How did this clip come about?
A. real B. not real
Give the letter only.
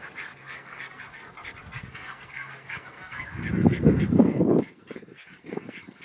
B